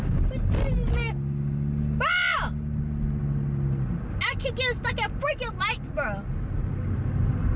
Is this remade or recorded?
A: recorded